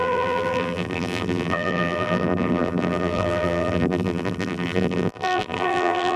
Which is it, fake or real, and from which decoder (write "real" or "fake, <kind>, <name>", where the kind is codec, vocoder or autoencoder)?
fake, vocoder, BigVGAN v2